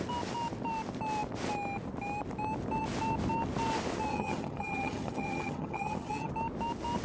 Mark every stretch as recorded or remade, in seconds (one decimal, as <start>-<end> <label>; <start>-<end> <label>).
0.0-4.1 recorded; 4.1-6.3 remade; 6.3-7.0 recorded